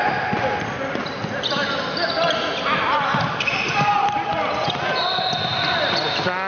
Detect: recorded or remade recorded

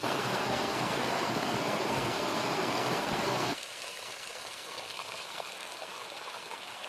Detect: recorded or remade remade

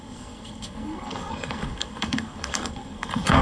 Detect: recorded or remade remade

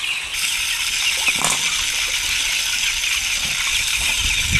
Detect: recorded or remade recorded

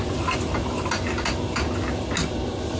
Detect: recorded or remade recorded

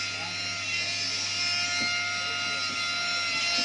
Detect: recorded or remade recorded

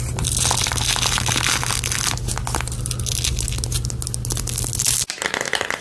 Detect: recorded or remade recorded